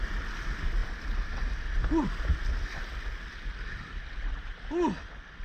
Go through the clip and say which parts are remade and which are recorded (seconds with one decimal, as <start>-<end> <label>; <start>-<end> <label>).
0.0-5.4 recorded